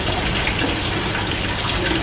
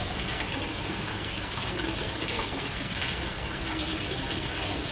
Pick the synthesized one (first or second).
second